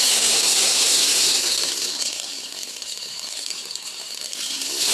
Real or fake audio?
fake